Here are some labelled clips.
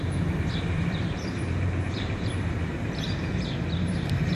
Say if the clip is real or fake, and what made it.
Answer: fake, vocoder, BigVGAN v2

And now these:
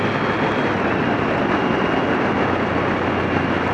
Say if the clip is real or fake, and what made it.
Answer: real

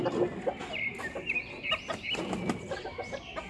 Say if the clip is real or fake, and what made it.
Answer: real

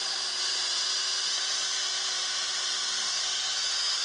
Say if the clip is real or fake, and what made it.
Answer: real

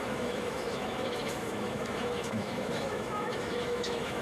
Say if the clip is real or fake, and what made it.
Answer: fake, autoencoder, DAC-VAE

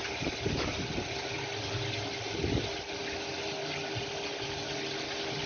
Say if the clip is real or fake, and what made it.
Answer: real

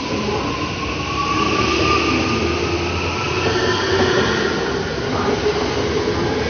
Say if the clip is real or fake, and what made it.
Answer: real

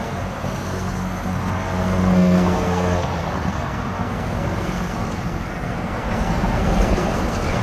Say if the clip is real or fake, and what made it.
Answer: fake, codec, SNAC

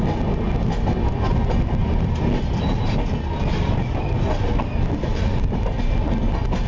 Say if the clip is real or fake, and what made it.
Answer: real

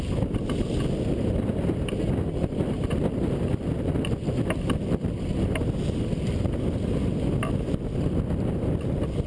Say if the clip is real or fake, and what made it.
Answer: real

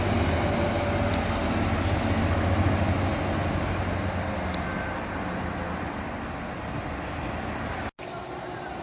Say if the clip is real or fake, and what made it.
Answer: real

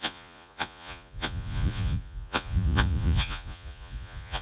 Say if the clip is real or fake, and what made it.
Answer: fake, vocoder, Vocos